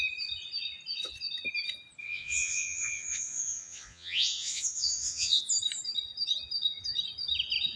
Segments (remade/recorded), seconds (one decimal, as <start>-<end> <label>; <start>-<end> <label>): 0.0-2.0 recorded; 2.0-5.4 remade; 5.4-7.8 recorded